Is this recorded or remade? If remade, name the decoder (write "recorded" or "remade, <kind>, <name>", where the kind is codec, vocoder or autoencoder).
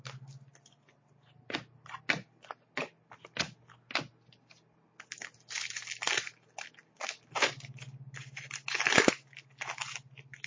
recorded